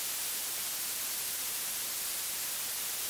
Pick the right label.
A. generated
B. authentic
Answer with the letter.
B